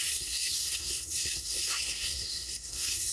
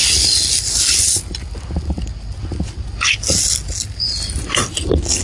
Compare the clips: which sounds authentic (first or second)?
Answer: second